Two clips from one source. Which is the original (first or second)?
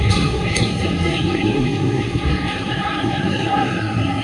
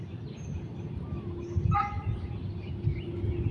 second